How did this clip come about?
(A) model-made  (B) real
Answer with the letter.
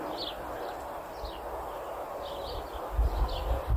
B